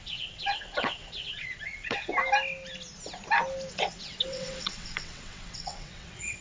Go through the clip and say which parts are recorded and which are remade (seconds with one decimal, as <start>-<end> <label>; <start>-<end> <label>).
0.0-2.1 remade; 2.1-3.7 recorded; 3.7-6.4 remade